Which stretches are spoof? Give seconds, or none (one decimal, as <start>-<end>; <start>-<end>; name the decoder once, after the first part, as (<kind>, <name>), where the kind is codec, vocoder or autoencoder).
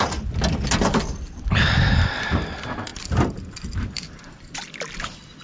none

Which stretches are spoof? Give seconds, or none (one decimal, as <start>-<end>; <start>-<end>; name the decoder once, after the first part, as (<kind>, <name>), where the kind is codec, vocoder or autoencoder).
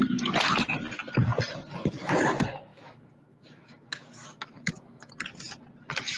2.7-5.1 (autoencoder, DAC-VAE)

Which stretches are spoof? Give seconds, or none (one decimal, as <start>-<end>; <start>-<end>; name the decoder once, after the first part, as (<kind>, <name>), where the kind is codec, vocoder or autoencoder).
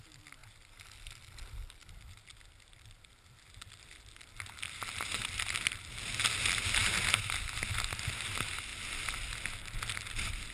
none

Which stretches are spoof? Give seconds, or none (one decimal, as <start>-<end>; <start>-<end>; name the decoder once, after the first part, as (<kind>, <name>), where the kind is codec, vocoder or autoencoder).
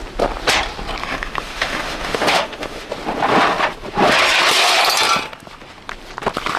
1.0-2.9 (autoencoder, DAC-VAE)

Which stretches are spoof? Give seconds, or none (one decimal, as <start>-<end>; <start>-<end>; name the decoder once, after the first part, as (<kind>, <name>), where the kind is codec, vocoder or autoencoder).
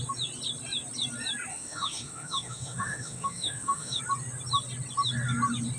1.5-4.0 (autoencoder, DAC-VAE)